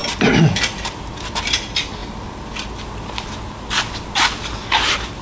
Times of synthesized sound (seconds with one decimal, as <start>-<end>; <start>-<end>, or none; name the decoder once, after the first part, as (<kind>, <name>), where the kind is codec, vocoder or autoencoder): 0.0-1.1 (vocoder, BigVGAN v2)